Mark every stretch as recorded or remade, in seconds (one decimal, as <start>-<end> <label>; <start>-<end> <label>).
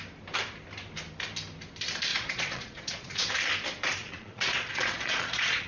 0.0-2.1 recorded; 2.1-3.3 remade; 3.3-4.0 recorded; 4.0-5.7 remade